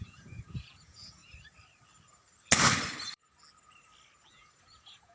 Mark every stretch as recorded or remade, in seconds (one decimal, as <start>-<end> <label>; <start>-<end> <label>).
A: 0.0-1.2 remade; 1.2-4.3 recorded; 4.3-5.1 remade